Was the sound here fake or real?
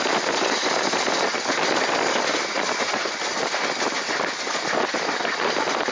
real